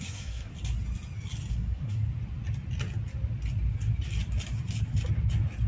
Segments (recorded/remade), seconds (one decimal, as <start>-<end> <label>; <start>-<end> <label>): 0.0-0.5 remade; 0.5-1.5 recorded; 1.5-2.0 remade; 2.0-5.7 recorded